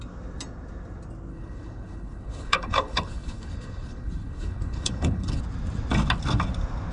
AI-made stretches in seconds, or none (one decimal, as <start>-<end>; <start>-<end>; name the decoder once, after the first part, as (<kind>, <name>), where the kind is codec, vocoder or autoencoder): 1.3-5.4 (codec, HILCodec)